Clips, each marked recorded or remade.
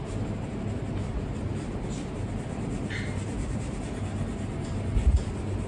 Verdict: recorded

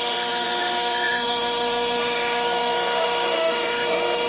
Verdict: remade